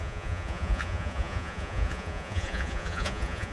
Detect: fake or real fake